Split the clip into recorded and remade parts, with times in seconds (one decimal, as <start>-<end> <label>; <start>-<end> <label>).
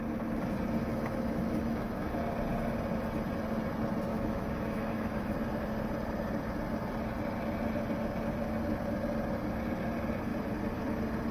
0.0-0.8 recorded; 0.8-2.2 remade; 2.2-4.1 recorded; 4.1-5.3 remade; 5.3-11.3 recorded